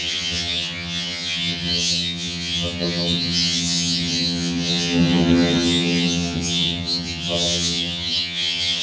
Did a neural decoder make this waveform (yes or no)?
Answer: yes